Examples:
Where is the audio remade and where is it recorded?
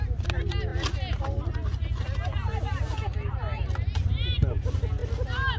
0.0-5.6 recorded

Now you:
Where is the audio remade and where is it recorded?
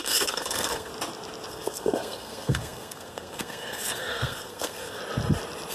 0.0-0.9 remade; 0.9-1.5 recorded; 1.5-5.0 remade; 5.0-5.7 recorded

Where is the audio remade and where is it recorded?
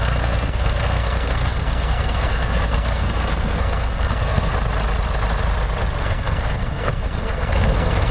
0.0-4.5 remade; 4.5-6.0 recorded; 6.0-8.1 remade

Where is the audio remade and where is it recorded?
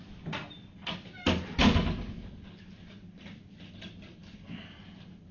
0.0-5.3 recorded